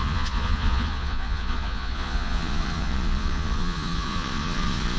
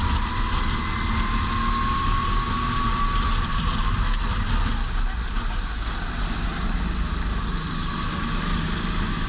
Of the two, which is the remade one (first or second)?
first